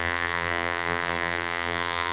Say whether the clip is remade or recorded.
remade